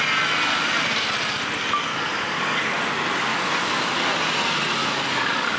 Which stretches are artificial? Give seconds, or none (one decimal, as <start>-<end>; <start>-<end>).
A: 1.9-2.9; 3.3-4.0; 4.8-5.6